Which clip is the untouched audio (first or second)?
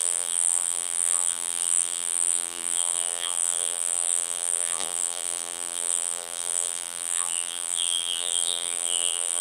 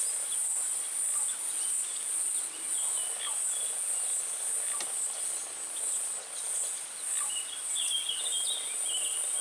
second